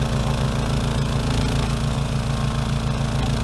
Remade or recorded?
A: recorded